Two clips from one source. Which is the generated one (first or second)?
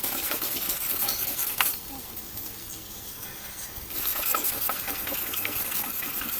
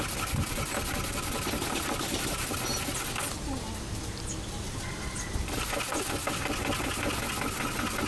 first